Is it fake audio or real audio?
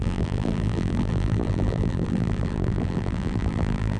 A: fake